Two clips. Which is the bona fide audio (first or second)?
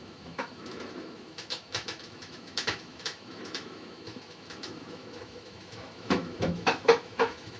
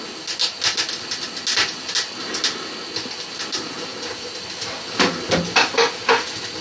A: second